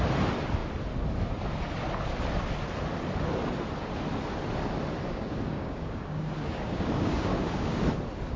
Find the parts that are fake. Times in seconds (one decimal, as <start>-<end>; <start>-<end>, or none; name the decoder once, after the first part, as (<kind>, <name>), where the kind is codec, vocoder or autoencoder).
5.1-7.8 (codec, DAC)